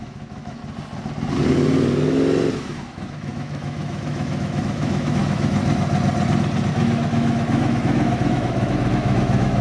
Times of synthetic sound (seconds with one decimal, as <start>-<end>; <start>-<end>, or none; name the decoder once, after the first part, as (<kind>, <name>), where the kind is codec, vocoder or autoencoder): 0.0-0.6 (autoencoder, DAC-VAE); 2.6-5.6; 6.7-9.6